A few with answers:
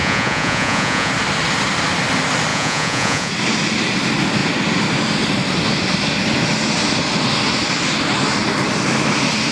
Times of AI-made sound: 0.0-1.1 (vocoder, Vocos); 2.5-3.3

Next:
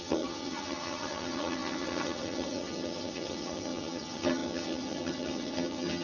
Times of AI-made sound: 0.0-6.0 (vocoder, HiFi-GAN)

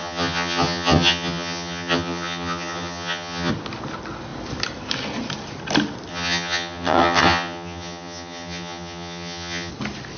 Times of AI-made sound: 0.0-3.5 (vocoder, HiFi-GAN); 6.1-9.7

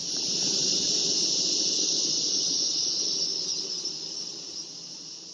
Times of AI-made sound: 0.0-1.6 (vocoder, BigVGAN v2); 3.3-5.3

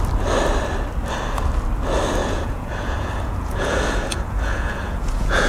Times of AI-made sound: 2.2-5.5 (vocoder, Vocos)